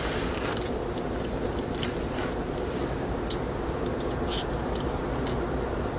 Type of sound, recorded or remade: recorded